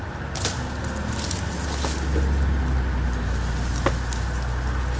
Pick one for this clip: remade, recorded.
recorded